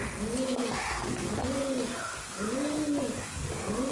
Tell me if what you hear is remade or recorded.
recorded